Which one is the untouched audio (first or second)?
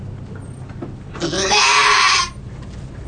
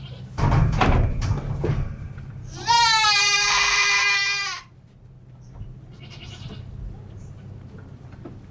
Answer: first